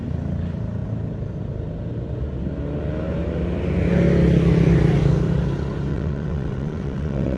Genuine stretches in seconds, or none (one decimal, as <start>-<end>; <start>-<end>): 0.0-5.9